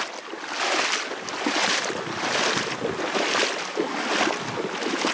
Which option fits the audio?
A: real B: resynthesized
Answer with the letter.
A